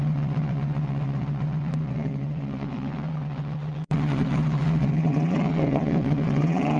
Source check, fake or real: fake